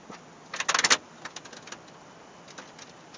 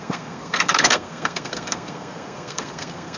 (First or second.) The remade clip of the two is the second